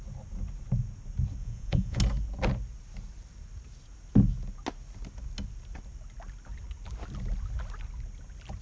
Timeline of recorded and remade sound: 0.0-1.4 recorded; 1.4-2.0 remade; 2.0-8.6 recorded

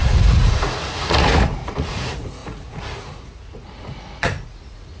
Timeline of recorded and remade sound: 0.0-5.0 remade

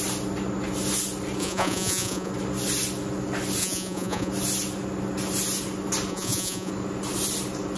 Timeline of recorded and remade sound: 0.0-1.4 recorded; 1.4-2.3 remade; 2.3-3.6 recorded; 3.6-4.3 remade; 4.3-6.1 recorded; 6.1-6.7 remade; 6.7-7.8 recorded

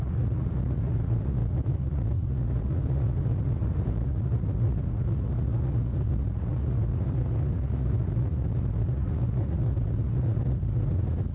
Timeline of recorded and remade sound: 0.0-11.3 remade

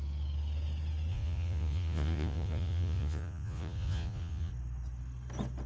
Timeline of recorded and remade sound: 0.0-1.1 recorded; 1.1-4.5 remade; 4.5-5.7 recorded